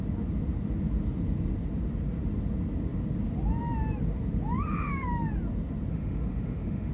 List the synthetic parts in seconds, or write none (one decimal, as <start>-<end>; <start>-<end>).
5.9-6.9